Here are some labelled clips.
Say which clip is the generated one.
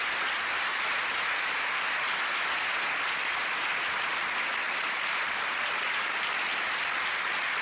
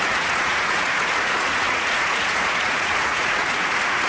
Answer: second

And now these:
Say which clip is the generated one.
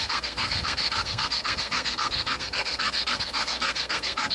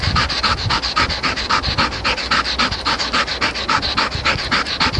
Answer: first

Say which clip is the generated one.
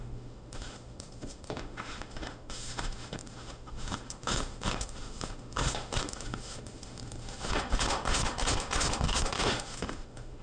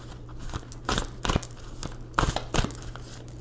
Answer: first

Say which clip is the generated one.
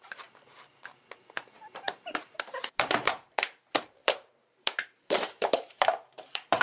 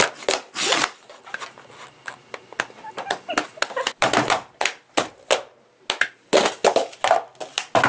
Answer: first